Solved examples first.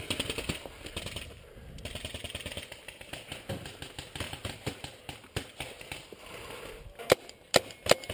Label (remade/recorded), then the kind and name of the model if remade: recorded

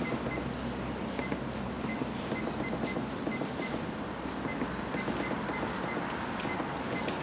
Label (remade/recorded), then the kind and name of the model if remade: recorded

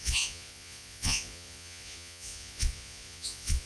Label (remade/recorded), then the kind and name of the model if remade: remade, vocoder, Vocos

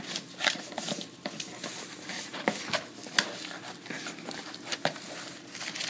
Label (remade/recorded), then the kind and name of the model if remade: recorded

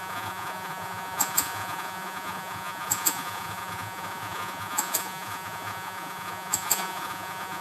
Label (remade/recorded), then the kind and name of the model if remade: remade, vocoder, Vocos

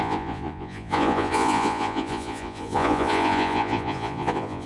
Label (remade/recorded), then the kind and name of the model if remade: remade, vocoder, Vocos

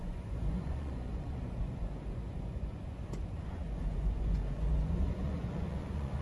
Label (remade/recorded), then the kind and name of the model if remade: remade, vocoder, Vocos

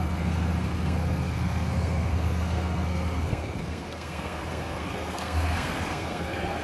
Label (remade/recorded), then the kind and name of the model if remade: remade, codec, SNAC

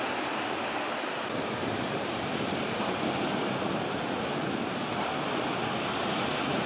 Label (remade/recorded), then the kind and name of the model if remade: recorded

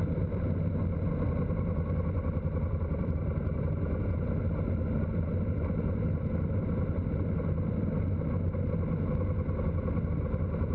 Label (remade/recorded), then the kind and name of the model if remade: recorded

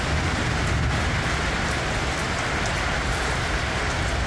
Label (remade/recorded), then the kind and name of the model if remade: recorded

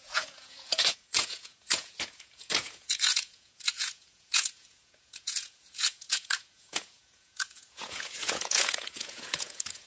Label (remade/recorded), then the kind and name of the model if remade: remade, vocoder, Vocos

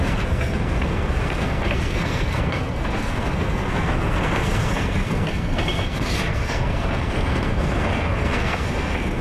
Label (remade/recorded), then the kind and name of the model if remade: remade, codec, SNAC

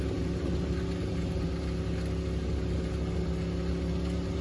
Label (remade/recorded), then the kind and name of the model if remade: recorded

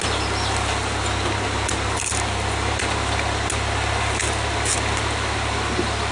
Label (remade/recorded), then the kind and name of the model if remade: recorded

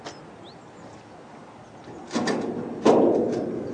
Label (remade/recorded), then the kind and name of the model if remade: recorded